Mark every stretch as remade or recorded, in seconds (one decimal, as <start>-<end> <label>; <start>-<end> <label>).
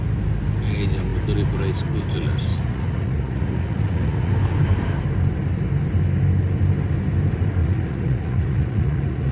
0.0-2.5 recorded; 2.5-4.3 remade; 4.3-7.6 recorded; 7.6-9.3 remade